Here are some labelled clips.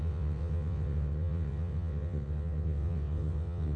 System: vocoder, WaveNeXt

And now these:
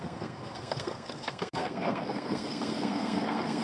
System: codec, SNAC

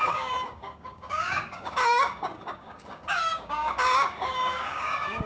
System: codec, DAC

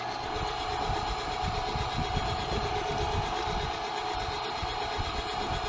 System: none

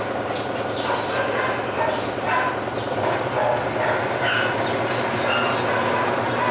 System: none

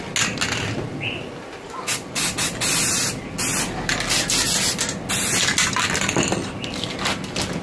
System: none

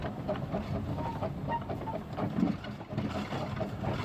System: vocoder, BigVGAN v2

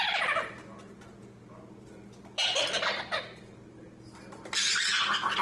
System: none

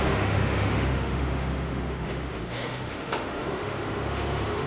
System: autoencoder, DAC-VAE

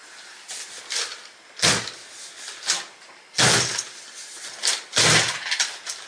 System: none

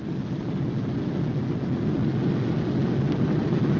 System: none